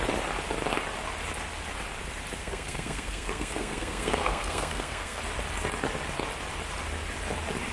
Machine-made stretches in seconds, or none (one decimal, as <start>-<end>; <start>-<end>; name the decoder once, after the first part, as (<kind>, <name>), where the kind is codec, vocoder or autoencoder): 2.4-5.2 (codec, SNAC)